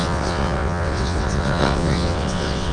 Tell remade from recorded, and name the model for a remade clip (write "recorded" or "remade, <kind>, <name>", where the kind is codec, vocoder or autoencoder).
remade, vocoder, WaveNeXt